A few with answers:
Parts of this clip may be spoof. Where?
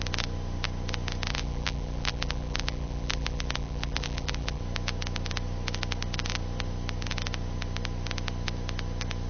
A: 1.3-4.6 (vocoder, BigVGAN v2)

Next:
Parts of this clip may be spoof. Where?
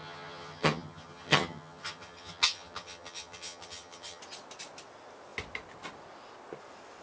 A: 0.0-4.2 (vocoder, HiFi-GAN)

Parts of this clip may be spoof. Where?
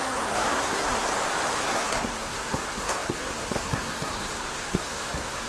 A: 0.0-1.1 (codec, SNAC); 1.6-5.5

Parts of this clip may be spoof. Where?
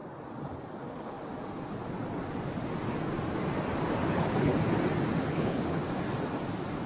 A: 0.9-1.3 (codec, HILCodec); 4.1-4.5; 5.2-5.8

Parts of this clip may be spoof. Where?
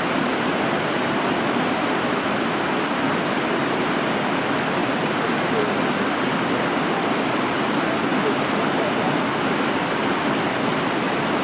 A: none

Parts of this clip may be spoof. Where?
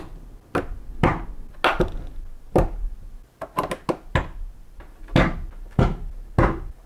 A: none